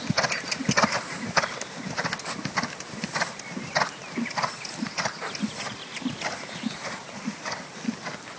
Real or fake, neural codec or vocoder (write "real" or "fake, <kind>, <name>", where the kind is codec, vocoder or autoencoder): real